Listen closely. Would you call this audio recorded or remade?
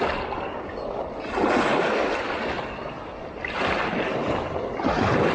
recorded